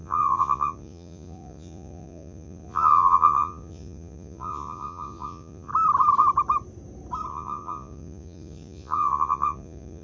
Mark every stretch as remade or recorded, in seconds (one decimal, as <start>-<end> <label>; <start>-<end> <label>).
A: 0.0-5.7 remade; 5.7-7.3 recorded; 7.3-10.0 remade